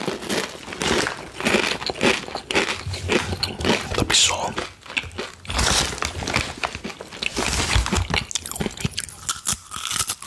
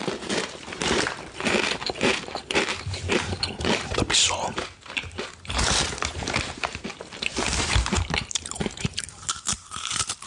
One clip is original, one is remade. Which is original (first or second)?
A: first